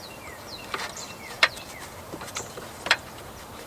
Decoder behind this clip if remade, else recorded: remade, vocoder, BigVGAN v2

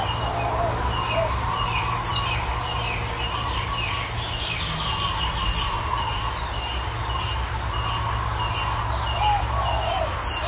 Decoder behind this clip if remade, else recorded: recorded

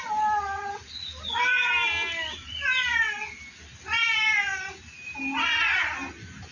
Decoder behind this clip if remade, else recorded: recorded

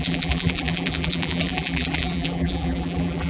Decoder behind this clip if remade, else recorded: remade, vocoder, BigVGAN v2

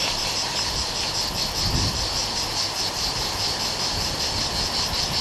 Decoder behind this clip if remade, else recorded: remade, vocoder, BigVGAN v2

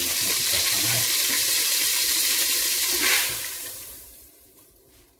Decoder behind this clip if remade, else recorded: remade, vocoder, BigVGAN v2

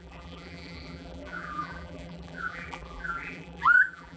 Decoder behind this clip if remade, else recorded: remade, vocoder, BigVGAN v2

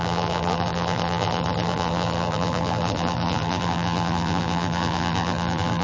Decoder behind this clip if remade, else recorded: remade, vocoder, BigVGAN v2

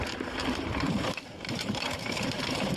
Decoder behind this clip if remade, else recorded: remade, vocoder, BigVGAN v2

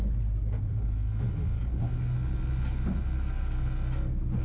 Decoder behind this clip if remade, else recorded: recorded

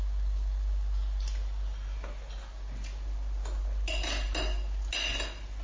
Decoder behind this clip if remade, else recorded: recorded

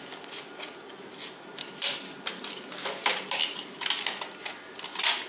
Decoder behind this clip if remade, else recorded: recorded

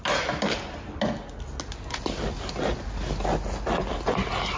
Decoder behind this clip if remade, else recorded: recorded